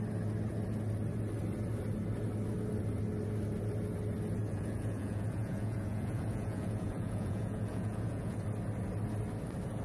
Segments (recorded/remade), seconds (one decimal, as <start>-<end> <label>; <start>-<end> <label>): 0.0-4.4 recorded; 4.4-8.4 remade; 8.4-9.8 recorded